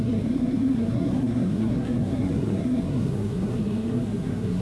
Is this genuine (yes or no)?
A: no